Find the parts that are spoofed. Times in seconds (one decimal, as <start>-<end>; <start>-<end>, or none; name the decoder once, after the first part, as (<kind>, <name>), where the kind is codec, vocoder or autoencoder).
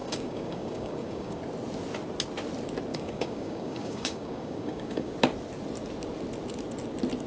0.0-1.4 (codec, DAC); 2.9-5.1